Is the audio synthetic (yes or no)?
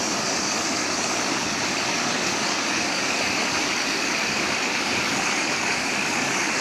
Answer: yes